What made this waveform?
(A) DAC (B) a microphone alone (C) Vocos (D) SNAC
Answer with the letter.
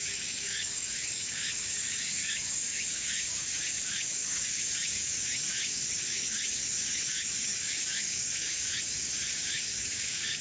A